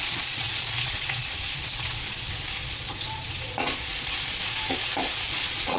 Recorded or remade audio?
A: remade